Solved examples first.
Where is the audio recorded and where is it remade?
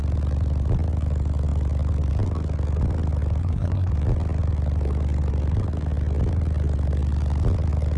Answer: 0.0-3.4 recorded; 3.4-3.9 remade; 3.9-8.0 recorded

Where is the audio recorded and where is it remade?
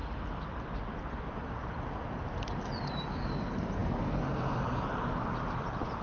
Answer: 0.0-6.0 recorded